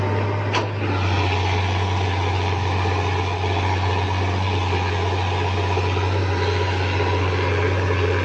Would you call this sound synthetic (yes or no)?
no